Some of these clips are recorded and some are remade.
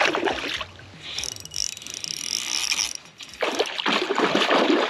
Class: recorded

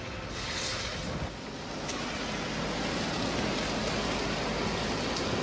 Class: recorded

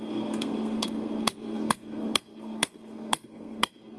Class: remade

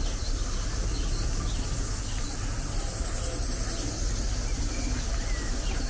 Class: recorded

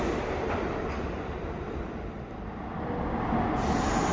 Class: recorded